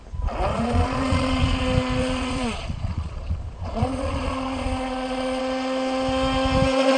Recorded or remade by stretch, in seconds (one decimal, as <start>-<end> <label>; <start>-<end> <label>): 0.0-0.5 recorded; 0.5-1.6 remade; 1.6-2.0 recorded; 2.0-5.4 remade; 5.4-7.0 recorded